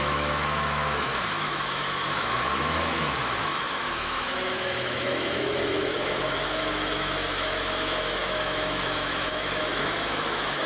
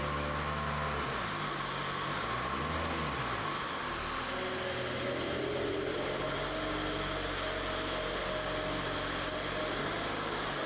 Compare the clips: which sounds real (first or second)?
second